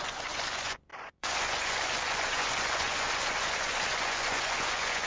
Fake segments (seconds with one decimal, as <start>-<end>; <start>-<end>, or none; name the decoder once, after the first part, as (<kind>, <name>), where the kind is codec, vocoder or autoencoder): 0.0-5.1 (vocoder, Vocos)